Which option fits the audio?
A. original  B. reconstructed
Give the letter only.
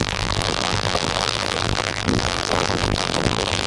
B